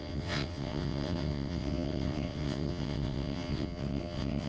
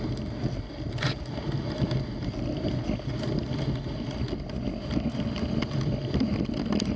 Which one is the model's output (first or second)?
first